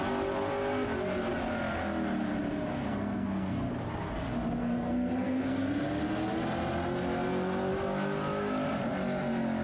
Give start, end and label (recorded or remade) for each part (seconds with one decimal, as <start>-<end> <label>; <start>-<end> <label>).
0.0-2.7 recorded; 2.7-3.7 remade; 3.7-4.6 recorded; 4.6-5.7 remade; 5.7-9.6 recorded